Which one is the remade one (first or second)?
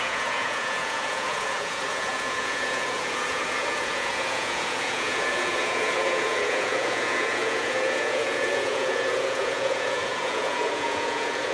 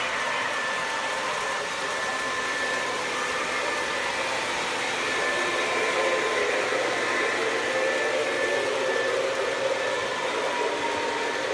first